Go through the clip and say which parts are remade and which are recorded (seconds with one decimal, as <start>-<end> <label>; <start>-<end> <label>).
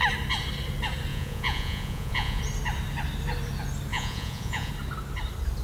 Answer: 0.0-1.1 recorded; 1.1-2.4 remade; 2.4-3.9 recorded; 3.9-4.7 remade; 4.7-5.6 recorded